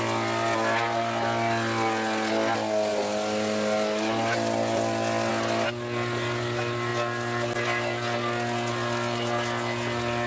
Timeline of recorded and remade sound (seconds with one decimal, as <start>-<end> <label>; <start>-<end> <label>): 0.0-10.3 recorded